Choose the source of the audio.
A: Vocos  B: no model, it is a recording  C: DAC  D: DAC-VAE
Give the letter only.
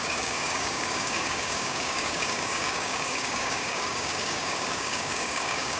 C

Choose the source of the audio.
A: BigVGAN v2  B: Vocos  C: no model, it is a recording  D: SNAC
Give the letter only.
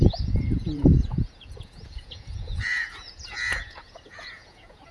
B